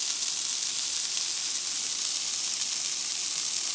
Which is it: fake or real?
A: real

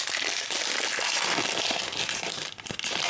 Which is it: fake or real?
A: real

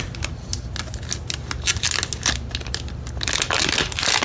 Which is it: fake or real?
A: real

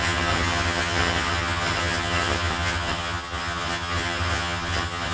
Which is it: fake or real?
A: fake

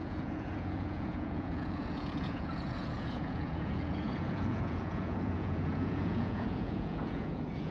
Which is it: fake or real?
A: fake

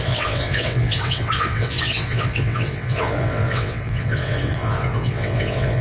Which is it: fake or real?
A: fake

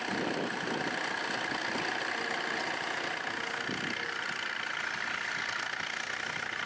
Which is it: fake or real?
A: real